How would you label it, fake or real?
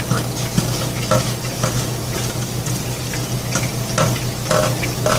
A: real